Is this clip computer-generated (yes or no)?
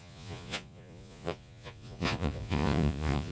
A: yes